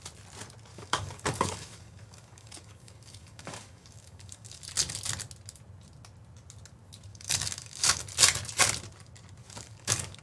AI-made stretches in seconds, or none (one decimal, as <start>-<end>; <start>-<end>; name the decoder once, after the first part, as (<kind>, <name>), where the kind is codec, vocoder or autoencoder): 0.7-4.6 (codec, DAC); 7.1-8.0; 9.4-10.2